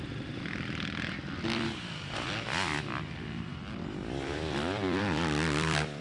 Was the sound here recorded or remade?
remade